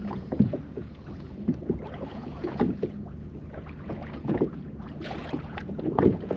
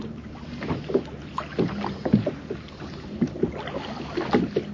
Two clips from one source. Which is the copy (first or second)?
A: first